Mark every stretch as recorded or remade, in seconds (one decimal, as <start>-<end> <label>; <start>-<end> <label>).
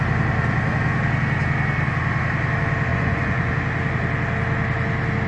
0.0-2.9 recorded; 2.9-3.5 remade; 3.5-5.3 recorded